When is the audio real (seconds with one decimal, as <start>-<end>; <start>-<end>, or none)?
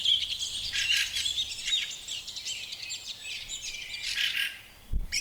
0.8-1.6